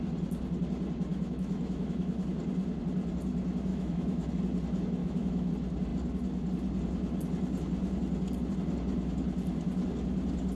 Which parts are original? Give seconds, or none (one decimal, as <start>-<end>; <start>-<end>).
0.0-1.1; 2.2-3.7; 4.3-5.0; 5.5-10.5